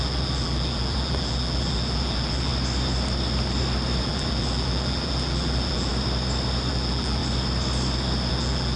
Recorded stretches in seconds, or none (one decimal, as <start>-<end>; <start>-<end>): 2.5-4.0; 5.9-6.7; 7.2-8.3